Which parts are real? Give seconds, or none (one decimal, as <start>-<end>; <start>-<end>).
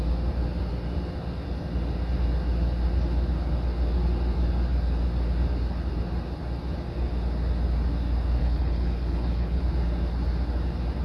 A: 0.0-8.4; 9.6-11.0